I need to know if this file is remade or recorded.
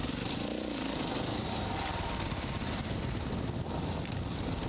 recorded